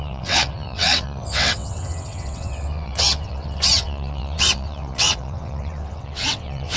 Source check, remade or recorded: remade